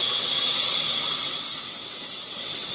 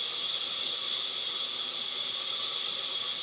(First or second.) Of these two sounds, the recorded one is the second